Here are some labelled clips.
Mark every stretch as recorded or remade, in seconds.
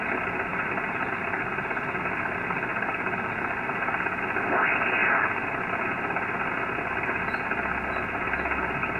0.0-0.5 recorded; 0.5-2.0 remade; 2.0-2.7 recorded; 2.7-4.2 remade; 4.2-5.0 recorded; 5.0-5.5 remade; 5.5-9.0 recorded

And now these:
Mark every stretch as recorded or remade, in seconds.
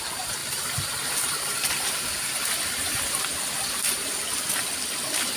0.0-0.4 recorded; 0.4-2.5 remade; 2.5-5.4 recorded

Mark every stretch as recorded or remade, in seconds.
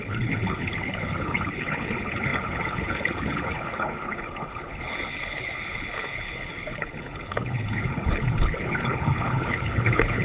0.0-10.2 remade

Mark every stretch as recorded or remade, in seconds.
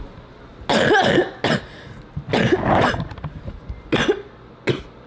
0.0-5.1 recorded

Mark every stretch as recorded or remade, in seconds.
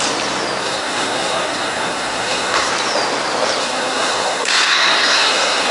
0.0-0.6 recorded; 0.6-2.7 remade; 2.7-3.6 recorded; 3.6-5.7 remade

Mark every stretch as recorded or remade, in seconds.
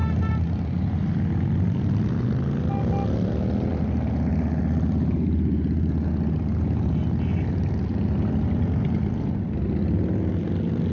0.0-10.9 recorded